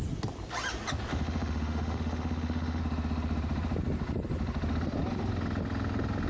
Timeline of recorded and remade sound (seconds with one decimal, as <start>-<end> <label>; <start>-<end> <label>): 0.0-1.1 recorded; 1.1-2.8 remade; 2.8-6.3 recorded

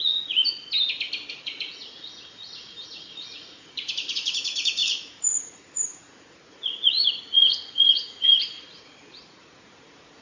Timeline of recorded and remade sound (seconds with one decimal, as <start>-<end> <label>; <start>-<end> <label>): 0.0-0.4 remade; 0.4-1.3 recorded; 1.3-10.2 remade

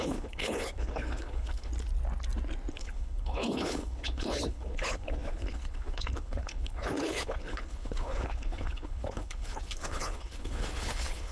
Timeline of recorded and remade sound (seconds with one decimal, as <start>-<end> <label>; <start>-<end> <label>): 0.0-1.7 remade; 1.7-2.7 recorded; 2.7-11.3 remade

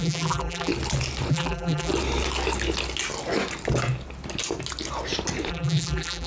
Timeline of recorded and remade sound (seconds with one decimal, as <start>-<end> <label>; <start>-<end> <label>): 0.0-0.7 remade; 0.7-1.3 recorded; 1.3-1.9 remade; 1.9-5.5 recorded; 5.5-6.3 remade

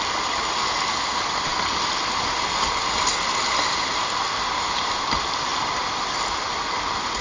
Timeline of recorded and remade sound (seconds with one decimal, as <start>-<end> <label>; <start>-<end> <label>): 0.0-7.2 recorded

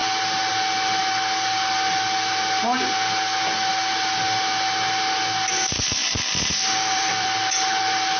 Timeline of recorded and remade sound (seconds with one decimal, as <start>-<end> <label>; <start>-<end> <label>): 0.0-6.0 recorded; 6.0-8.2 remade

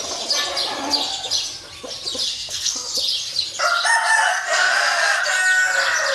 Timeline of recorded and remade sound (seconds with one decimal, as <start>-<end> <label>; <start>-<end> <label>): 0.0-2.3 recorded; 2.3-2.9 remade; 2.9-4.3 recorded; 4.3-5.2 remade; 5.2-6.1 recorded

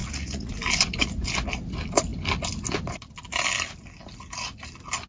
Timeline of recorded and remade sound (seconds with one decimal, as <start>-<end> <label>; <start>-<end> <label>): 0.0-0.5 remade; 0.5-5.1 recorded